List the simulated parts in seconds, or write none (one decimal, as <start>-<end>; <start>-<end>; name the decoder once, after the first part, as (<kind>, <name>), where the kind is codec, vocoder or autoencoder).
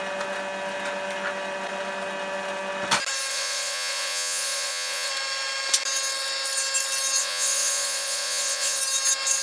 3.3-5.1 (vocoder, Vocos); 7.2-8.8